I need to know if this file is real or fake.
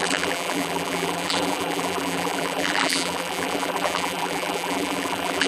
fake